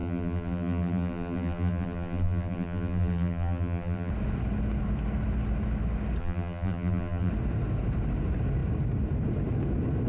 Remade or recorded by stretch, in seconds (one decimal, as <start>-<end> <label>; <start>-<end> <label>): 0.0-4.1 remade; 4.1-6.2 recorded; 6.2-7.3 remade; 7.3-10.1 recorded